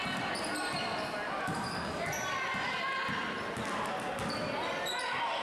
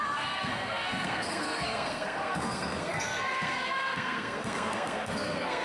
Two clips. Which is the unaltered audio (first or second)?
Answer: first